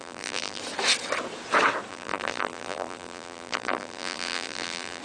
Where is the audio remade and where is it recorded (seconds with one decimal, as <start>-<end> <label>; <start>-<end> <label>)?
0.0-0.6 remade; 0.6-1.9 recorded; 1.9-5.0 remade